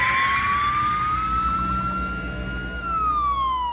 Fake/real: real